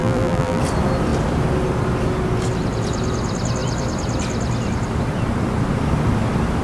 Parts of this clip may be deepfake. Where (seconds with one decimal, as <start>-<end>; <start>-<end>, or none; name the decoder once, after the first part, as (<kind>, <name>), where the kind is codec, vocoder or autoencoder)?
0.0-0.6 (vocoder, BigVGAN v2)